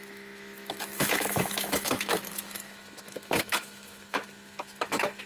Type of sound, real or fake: fake